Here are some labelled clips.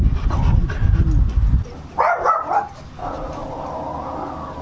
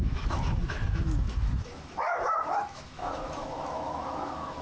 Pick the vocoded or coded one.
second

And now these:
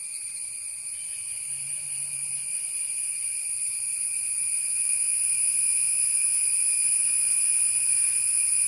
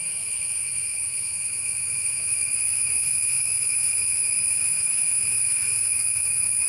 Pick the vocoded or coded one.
second